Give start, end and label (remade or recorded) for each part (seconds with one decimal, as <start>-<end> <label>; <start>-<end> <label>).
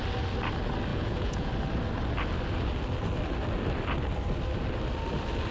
0.0-0.9 recorded; 0.9-1.5 remade; 1.5-5.5 recorded